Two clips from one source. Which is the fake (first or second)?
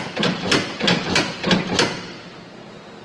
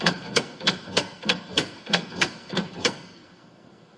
second